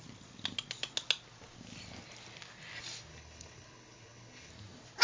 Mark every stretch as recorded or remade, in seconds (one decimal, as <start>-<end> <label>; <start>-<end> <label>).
0.0-3.1 recorded; 3.1-4.5 remade; 4.5-5.0 recorded